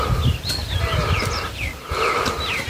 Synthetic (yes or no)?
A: yes